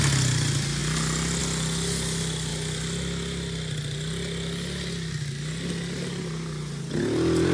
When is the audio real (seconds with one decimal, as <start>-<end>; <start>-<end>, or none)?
0.0-7.5